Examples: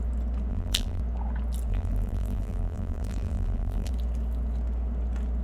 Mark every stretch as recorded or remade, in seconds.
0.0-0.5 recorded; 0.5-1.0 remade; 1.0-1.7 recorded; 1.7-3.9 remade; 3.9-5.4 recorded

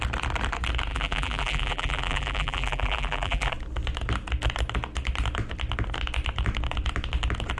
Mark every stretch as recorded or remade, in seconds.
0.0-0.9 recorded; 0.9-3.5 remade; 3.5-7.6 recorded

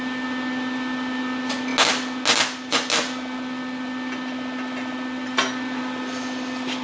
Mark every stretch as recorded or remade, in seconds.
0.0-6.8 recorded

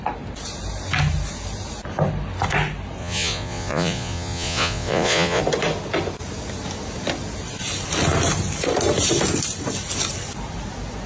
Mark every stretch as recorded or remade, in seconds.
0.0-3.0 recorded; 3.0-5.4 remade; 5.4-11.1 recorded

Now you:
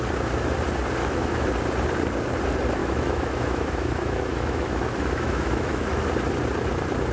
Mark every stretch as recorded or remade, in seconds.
0.0-1.0 recorded; 1.0-1.5 remade; 1.5-2.8 recorded; 2.8-6.0 remade; 6.0-7.1 recorded